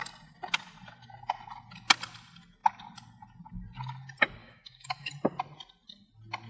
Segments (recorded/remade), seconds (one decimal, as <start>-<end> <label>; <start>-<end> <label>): 0.0-4.4 recorded; 4.4-5.1 remade; 5.1-6.5 recorded